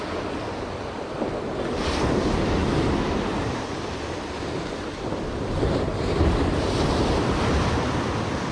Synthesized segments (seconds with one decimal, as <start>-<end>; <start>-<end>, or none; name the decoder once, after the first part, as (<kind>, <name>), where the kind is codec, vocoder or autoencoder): none